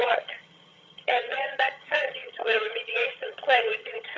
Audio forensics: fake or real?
fake